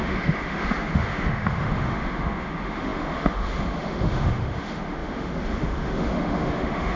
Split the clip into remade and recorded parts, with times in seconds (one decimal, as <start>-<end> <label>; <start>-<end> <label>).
0.0-7.0 remade